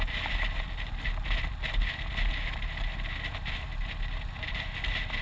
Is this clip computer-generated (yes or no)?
no